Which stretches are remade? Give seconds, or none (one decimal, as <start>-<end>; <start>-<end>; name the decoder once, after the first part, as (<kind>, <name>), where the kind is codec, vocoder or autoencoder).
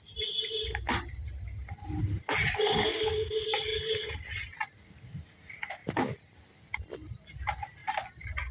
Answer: none